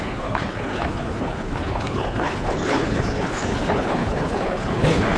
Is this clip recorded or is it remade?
remade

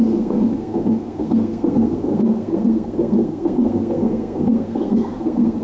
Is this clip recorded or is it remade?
remade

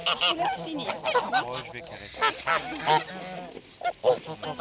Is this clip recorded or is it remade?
recorded